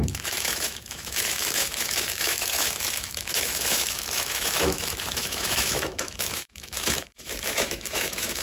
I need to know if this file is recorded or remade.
remade